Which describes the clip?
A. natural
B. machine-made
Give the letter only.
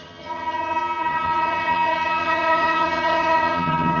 B